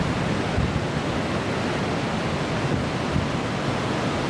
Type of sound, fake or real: real